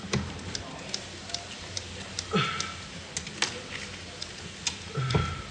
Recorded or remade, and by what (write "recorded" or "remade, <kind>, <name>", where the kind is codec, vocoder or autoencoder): recorded